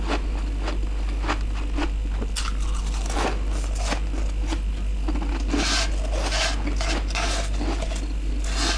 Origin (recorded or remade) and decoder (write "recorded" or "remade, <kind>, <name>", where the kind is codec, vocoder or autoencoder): recorded